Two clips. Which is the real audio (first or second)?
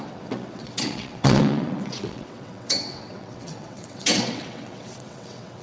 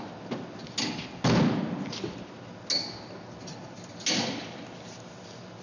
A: second